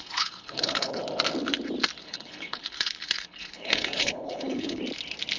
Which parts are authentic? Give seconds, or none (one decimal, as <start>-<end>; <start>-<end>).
1.0-2.0; 4.8-5.4